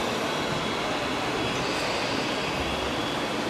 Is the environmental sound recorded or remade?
recorded